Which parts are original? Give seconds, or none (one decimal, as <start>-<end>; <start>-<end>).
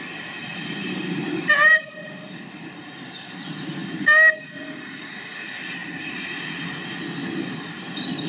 0.0-0.5; 1.2-8.3